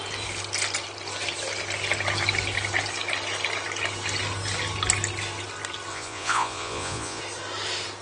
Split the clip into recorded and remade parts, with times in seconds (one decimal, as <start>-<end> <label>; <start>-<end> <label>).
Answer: 0.0-5.9 recorded; 5.9-7.2 remade; 7.2-8.0 recorded